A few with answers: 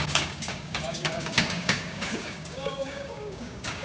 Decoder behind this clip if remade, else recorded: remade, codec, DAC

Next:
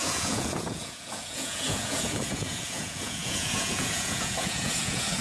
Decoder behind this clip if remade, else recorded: remade, vocoder, Vocos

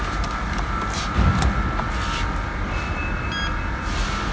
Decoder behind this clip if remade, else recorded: recorded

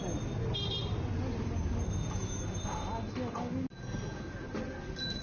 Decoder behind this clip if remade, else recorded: recorded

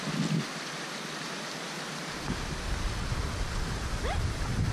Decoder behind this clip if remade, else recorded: recorded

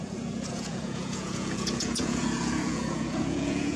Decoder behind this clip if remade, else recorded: remade, vocoder, Vocos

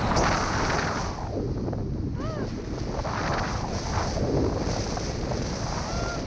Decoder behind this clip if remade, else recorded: recorded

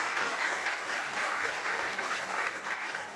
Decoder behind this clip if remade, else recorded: remade, codec, DAC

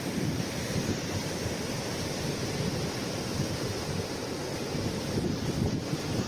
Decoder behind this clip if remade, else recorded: remade, vocoder, BigVGAN v2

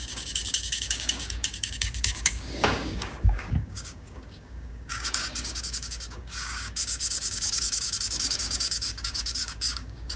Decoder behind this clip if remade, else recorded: remade, codec, DAC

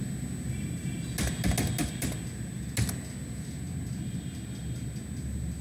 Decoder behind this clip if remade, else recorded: recorded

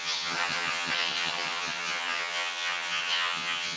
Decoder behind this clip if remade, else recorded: remade, vocoder, HiFi-GAN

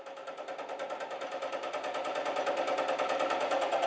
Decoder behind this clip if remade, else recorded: recorded